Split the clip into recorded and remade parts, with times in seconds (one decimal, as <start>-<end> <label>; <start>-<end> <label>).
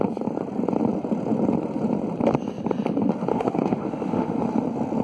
0.0-3.3 recorded; 3.3-4.4 remade; 4.4-5.0 recorded